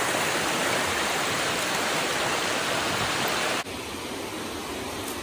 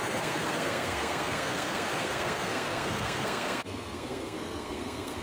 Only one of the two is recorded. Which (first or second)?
first